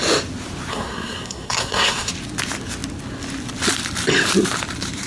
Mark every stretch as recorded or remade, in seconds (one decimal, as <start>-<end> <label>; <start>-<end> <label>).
0.0-0.7 recorded; 0.7-2.1 remade; 2.1-5.1 recorded